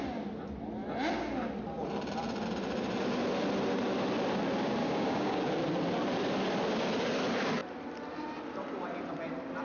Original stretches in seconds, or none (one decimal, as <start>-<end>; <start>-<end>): 0.0-4.8; 5.4-9.6